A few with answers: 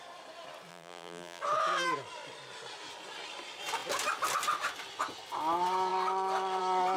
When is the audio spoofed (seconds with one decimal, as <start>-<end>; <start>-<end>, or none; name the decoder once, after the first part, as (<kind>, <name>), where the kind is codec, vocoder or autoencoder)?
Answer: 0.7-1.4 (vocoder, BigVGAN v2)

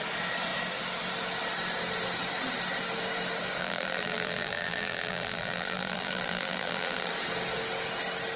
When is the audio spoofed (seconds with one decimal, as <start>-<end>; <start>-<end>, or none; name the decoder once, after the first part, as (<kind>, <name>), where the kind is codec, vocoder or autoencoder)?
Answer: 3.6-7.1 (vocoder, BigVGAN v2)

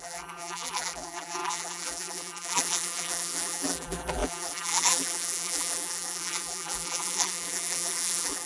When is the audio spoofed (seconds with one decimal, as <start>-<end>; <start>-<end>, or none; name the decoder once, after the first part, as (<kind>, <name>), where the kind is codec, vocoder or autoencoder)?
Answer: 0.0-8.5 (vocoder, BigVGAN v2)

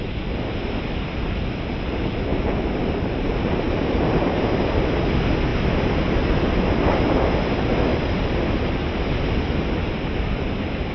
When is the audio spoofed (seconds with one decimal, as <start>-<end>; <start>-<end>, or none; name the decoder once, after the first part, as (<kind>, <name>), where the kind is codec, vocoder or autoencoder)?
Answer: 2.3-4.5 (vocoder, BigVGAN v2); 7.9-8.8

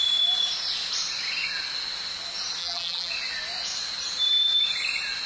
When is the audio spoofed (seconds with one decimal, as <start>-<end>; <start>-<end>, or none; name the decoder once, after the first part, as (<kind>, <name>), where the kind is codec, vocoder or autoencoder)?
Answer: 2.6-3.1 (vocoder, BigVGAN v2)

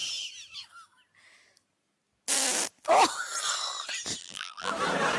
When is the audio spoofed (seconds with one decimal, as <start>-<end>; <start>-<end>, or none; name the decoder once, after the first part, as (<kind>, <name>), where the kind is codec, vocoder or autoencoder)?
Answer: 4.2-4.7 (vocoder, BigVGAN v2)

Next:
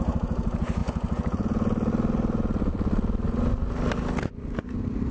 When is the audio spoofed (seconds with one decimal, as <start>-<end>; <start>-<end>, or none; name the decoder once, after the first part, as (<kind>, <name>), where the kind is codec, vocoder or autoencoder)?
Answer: none

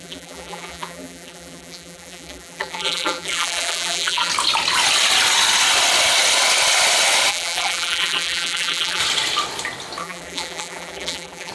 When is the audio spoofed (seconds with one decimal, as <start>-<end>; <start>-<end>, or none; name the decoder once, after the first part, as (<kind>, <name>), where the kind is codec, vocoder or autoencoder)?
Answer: 0.0-4.3 (vocoder, BigVGAN v2); 7.3-9.0; 10.0-11.5